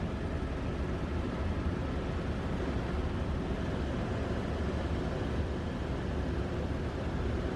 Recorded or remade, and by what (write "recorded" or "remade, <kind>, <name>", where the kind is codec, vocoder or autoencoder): recorded